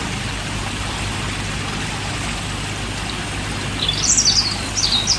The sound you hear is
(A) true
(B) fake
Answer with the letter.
A